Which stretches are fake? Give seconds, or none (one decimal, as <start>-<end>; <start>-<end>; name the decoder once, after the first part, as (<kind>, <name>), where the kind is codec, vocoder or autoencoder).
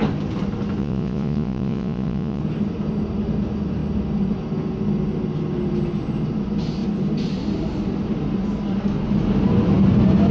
0.8-2.4 (vocoder, Vocos)